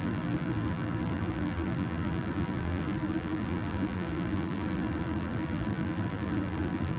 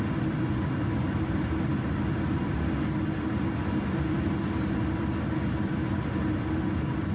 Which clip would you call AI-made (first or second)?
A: first